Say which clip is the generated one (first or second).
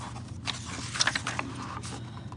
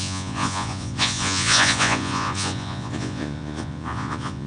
second